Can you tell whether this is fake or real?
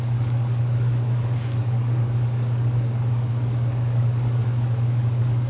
fake